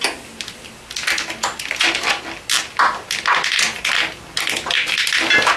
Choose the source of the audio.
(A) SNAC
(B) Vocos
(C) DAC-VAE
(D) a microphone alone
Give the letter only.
D